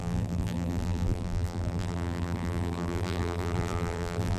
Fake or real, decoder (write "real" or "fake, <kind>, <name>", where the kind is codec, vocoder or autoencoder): fake, vocoder, BigVGAN v2